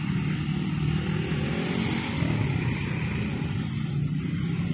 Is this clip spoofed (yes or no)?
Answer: no